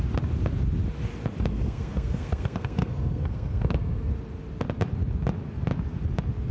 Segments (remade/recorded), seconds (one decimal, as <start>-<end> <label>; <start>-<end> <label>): 0.0-1.5 recorded; 1.5-4.1 remade; 4.1-6.5 recorded